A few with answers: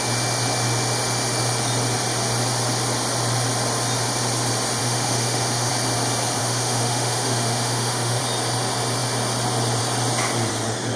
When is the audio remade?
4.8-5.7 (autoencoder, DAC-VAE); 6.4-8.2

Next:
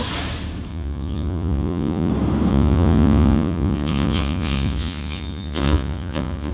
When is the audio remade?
0.7-2.1 (vocoder, Vocos); 2.5-6.5

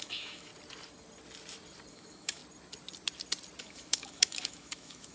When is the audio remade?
0.0-0.5 (autoencoder, DAC-VAE); 1.9-2.4; 3.6-5.1

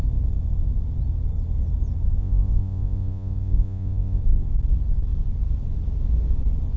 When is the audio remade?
2.2-4.2 (vocoder, Vocos)

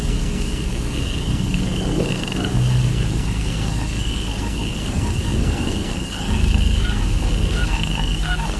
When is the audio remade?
0.0-8.6 (codec, SNAC)

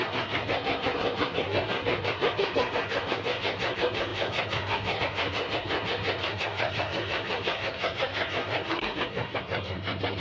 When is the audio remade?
0.0-10.2 (codec, SNAC)